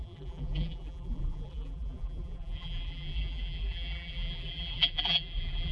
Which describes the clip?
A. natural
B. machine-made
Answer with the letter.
B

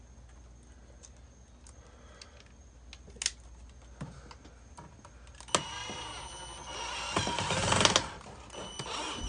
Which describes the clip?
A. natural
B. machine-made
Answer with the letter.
A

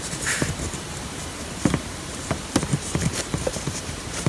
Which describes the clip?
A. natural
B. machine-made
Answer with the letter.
B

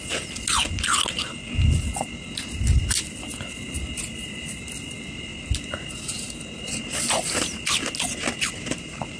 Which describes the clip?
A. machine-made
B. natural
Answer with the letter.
B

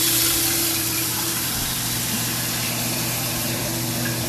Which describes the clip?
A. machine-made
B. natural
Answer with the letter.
A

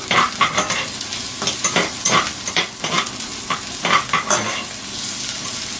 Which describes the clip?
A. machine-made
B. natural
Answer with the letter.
B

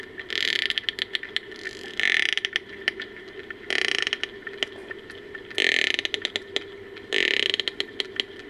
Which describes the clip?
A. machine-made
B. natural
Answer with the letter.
B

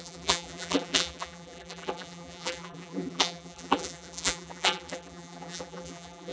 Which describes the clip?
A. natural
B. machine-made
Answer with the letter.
B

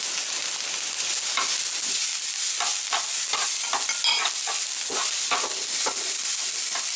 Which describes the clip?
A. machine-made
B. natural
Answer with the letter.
B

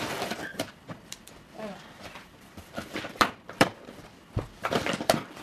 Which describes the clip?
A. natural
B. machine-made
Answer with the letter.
B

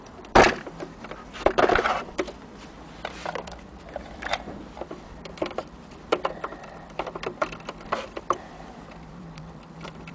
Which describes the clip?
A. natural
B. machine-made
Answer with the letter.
B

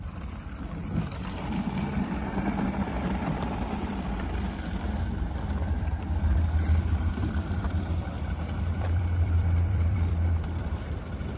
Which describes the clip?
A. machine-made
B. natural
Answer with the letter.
A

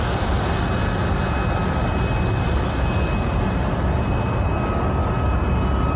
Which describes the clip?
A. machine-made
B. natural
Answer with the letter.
B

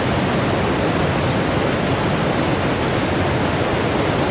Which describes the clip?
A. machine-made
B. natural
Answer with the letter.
B